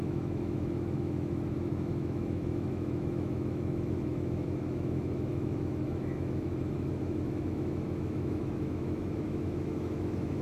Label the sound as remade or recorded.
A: remade